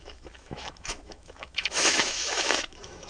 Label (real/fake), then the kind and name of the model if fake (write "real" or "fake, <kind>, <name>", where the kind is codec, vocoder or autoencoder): fake, autoencoder, DAC-VAE